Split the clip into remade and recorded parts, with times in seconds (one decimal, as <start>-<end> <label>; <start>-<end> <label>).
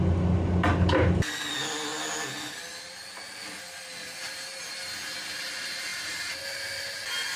0.0-5.9 recorded; 5.9-6.4 remade; 6.4-7.4 recorded